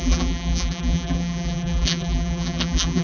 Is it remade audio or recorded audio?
remade